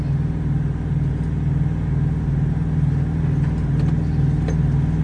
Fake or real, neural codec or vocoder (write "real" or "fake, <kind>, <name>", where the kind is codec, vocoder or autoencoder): real